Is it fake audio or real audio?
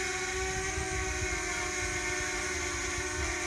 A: real